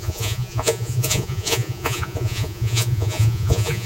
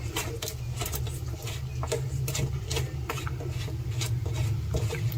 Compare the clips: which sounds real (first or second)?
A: second